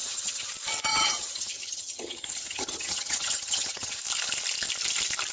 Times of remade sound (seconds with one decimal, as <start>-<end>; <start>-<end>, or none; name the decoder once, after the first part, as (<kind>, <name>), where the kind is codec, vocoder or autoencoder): 0.0-0.5 (vocoder, HiFi-GAN); 0.9-4.0